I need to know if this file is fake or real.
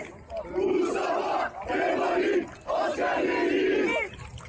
real